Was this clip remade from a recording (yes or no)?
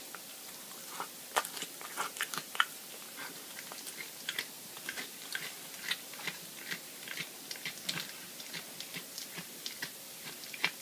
no